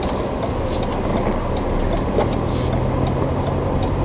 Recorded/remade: recorded